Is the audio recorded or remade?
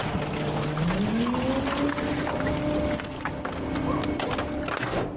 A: recorded